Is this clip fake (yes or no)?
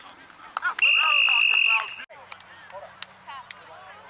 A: no